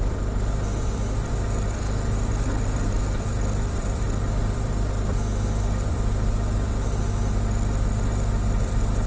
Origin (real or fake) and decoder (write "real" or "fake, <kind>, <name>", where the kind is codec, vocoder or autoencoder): fake, vocoder, BigVGAN v2